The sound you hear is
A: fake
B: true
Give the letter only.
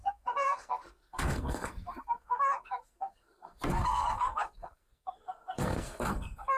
A